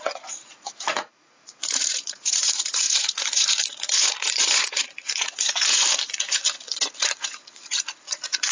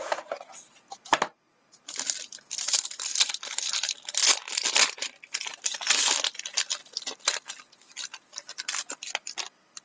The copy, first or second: first